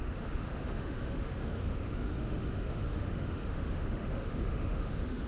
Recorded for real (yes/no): no